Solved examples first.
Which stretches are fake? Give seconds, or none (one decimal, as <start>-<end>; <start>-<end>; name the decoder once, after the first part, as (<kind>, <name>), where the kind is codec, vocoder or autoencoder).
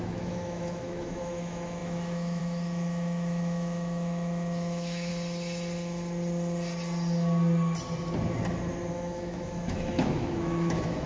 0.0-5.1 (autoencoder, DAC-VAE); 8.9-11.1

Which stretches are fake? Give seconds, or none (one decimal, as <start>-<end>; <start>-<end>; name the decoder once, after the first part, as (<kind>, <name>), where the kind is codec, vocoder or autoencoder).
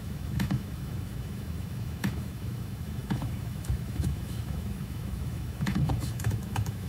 0.0-6.9 (autoencoder, DAC-VAE)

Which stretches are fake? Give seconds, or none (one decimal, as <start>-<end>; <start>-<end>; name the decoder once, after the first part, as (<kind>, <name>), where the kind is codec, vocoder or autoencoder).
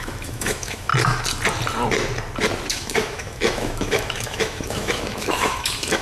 0.0-0.9 (autoencoder, DAC-VAE); 2.7-6.0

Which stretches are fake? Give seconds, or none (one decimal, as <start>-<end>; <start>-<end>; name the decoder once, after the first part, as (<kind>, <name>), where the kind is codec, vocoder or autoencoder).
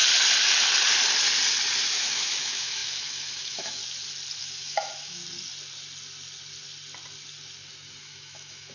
1.9-3.8 (autoencoder, DAC-VAE); 4.4-5.2; 8.0-8.7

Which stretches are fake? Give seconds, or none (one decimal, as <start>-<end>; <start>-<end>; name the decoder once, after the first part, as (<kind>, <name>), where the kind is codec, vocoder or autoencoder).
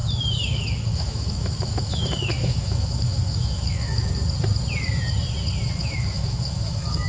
0.0-4.1 (autoencoder, DAC-VAE); 5.8-7.1